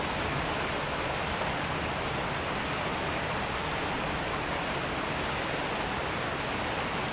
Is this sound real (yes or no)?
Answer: yes